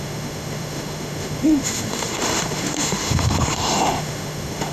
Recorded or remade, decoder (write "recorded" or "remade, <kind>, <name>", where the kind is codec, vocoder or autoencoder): remade, autoencoder, DAC-VAE